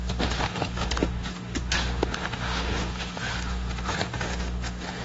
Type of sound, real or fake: fake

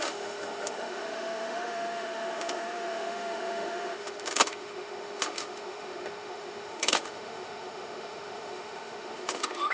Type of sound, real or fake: fake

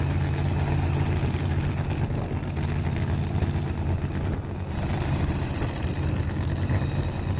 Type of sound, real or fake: real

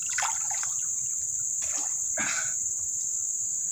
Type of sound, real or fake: real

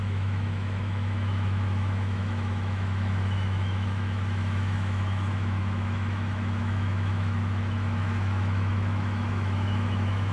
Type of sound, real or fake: fake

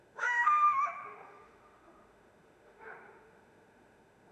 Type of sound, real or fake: fake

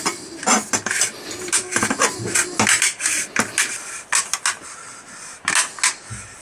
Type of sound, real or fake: real